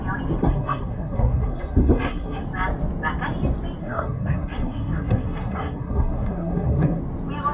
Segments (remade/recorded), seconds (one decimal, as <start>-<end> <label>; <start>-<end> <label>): 0.0-0.4 recorded; 0.4-2.4 remade; 2.4-3.8 recorded; 3.8-7.0 remade; 7.0-7.5 recorded